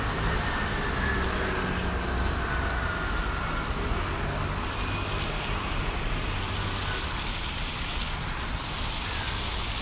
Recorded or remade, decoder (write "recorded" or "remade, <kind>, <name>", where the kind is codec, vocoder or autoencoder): recorded